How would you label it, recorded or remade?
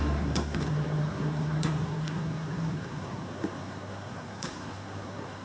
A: remade